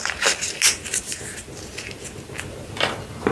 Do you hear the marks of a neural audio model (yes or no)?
no